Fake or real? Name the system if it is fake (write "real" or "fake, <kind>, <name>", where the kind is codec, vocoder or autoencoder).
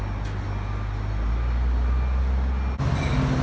real